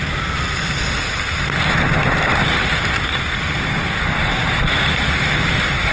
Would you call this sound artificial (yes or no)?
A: no